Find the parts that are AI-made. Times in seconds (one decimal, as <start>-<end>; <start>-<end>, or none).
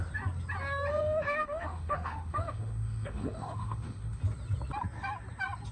0.9-4.2